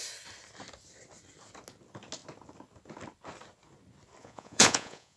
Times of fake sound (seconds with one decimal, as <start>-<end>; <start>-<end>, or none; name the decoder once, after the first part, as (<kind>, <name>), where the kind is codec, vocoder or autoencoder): 4.2-5.2 (vocoder, Vocos)